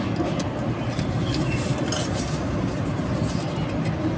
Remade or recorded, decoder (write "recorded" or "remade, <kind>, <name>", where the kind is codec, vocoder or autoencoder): recorded